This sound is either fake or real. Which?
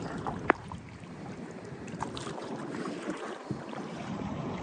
fake